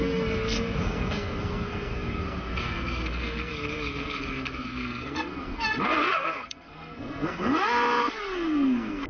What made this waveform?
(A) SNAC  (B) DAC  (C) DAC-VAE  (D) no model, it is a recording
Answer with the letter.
A